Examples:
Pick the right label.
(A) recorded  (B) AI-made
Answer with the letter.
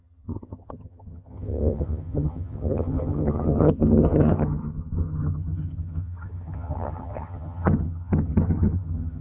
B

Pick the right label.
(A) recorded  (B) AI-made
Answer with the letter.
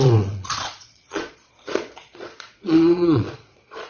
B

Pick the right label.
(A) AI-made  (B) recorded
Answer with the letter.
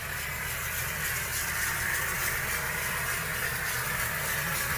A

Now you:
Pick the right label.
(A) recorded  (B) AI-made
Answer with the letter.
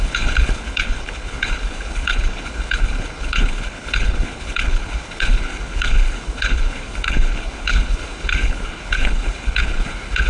B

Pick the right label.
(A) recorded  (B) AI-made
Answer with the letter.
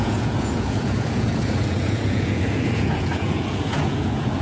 B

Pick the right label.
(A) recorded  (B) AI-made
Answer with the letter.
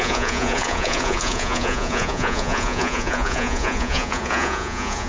B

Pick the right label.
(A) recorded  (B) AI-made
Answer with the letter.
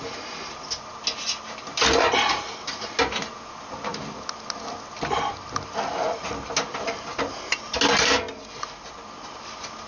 A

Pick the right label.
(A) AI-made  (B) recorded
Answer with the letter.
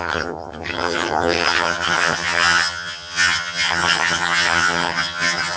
A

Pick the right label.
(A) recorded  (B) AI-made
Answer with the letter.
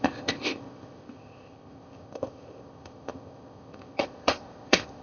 B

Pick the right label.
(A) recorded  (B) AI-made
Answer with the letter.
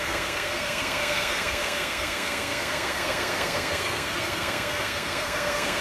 B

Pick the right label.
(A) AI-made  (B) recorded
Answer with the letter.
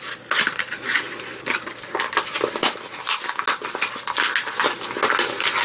B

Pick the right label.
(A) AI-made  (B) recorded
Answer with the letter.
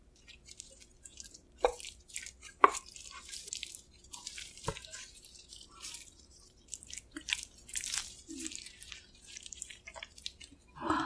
A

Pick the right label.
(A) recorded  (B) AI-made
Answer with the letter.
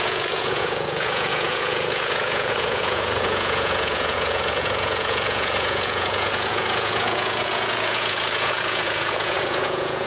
B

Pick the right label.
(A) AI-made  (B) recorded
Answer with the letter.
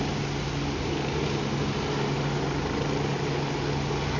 B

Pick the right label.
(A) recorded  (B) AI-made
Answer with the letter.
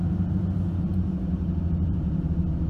A